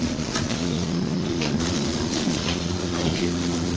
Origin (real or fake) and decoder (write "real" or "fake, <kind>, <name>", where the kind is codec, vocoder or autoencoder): fake, vocoder, Vocos